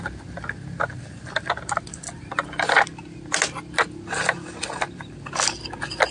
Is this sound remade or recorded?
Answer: recorded